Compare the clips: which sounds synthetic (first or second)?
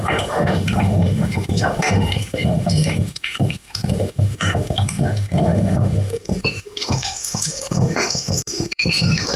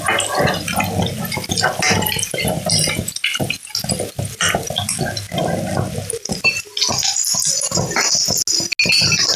first